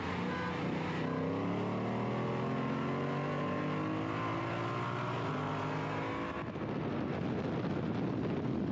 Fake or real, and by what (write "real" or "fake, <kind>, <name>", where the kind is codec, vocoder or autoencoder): real